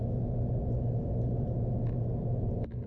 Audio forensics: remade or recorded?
recorded